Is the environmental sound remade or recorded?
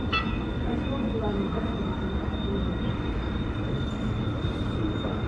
recorded